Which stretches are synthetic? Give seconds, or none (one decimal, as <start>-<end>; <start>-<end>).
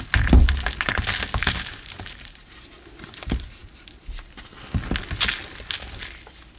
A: 1.4-2.7